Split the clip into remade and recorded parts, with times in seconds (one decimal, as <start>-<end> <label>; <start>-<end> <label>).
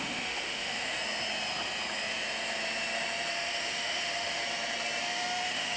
0.0-0.9 remade; 0.9-3.3 recorded; 3.3-4.4 remade; 4.4-5.0 recorded; 5.0-5.8 remade